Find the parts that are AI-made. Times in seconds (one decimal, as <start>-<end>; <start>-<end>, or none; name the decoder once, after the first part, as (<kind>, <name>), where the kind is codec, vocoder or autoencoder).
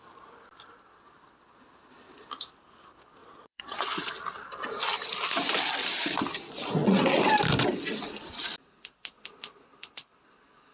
3.2-4.1 (vocoder, WaveNeXt); 6.8-7.3